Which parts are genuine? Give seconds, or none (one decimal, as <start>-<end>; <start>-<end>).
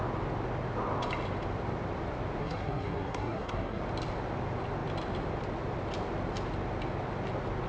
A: 0.0-2.4; 3.8-7.7